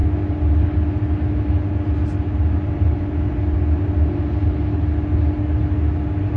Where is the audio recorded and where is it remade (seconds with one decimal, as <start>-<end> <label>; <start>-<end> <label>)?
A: 0.0-6.4 recorded